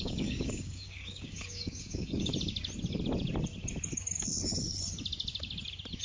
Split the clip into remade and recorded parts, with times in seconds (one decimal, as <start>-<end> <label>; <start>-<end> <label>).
0.0-2.3 remade; 2.3-6.0 recorded